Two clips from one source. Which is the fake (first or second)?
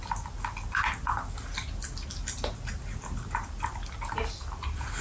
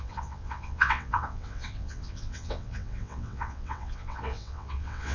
second